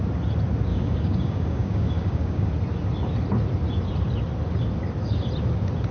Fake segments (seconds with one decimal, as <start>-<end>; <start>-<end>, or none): 0.7-2.5